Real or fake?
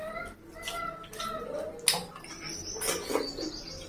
real